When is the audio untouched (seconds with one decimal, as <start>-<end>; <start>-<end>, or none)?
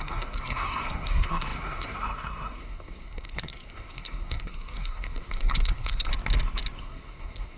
6.1-6.8